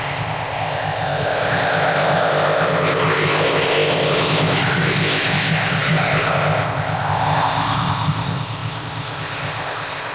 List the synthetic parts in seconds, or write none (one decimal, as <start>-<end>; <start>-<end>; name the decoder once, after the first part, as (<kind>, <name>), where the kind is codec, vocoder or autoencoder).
0.0-10.1 (codec, ZipCodec)